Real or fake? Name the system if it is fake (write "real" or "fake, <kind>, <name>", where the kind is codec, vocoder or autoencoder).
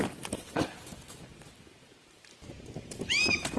fake, vocoder, BigVGAN v2